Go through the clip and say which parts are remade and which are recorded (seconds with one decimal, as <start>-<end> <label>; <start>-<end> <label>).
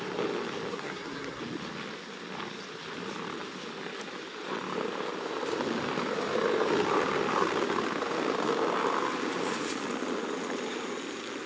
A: 0.0-0.7 recorded; 0.7-1.4 remade; 1.4-11.5 recorded